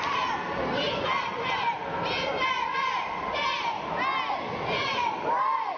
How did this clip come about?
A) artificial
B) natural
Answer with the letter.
B